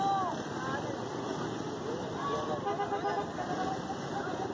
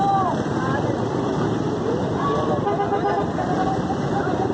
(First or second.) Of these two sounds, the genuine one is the first